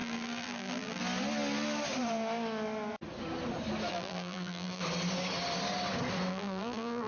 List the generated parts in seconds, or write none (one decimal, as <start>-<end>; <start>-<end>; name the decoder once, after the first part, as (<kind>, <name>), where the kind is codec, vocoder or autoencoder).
0.0-1.0 (vocoder, BigVGAN v2); 3.9-4.8; 6.3-7.1